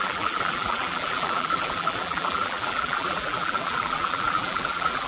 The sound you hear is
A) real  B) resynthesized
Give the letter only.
B